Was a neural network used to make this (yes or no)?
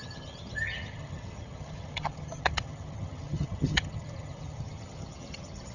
yes